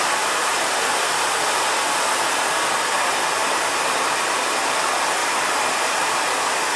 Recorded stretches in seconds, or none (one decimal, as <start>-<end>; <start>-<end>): 0.0-3.4; 4.2-5.2; 6.0-6.8